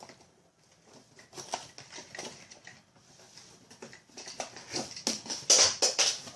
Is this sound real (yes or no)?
yes